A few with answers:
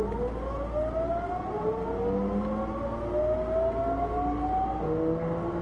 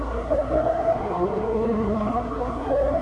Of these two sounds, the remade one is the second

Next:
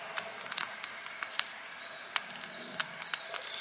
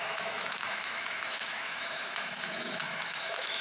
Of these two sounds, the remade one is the second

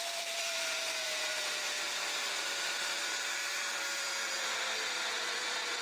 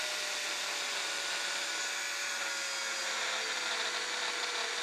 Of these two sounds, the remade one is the first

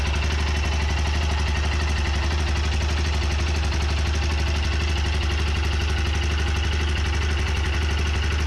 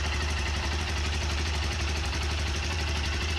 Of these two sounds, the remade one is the second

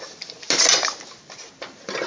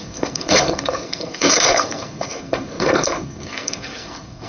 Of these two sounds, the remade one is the second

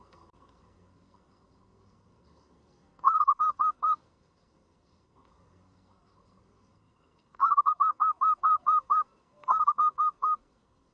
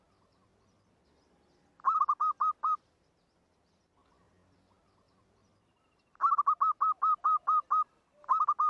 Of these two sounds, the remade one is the first